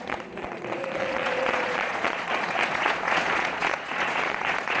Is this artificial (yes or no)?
yes